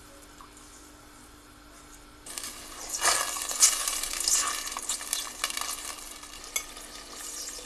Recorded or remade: recorded